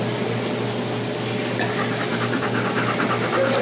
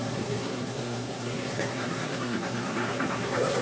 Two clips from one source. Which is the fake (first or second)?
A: second